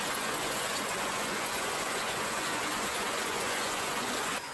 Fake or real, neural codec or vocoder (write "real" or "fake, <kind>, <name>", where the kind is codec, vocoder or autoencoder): fake, vocoder, Vocos